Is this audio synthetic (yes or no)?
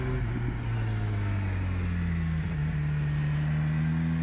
no